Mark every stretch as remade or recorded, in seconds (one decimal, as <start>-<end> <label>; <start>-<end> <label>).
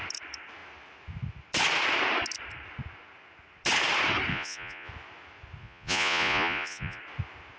0.0-4.3 recorded; 4.3-4.9 remade; 4.9-5.6 recorded; 5.6-7.0 remade; 7.0-7.6 recorded